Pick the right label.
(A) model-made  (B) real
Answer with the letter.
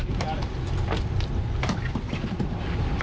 B